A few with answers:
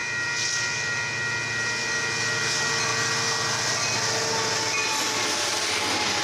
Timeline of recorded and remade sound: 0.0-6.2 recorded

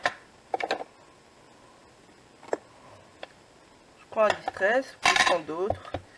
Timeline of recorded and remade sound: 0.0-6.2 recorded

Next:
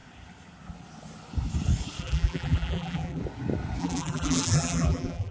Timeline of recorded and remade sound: 0.0-2.0 recorded; 2.0-3.2 remade; 3.2-3.8 recorded; 3.8-5.3 remade

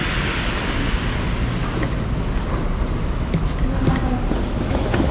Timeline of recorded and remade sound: 0.0-3.0 recorded; 3.0-3.4 remade; 3.4-4.5 recorded; 4.5-5.1 remade

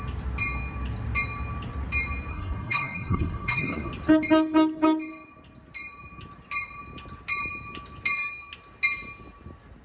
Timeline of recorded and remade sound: 0.0-2.3 recorded; 2.3-3.9 remade; 3.9-9.8 recorded

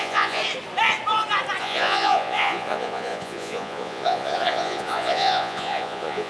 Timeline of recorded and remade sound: 0.0-0.4 remade; 0.4-1.6 recorded; 1.6-6.3 remade

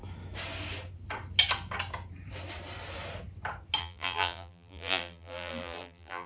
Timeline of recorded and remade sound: 0.0-3.8 recorded; 3.8-6.3 remade

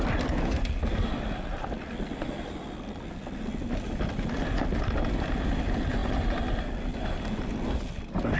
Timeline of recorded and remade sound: 0.0-8.4 recorded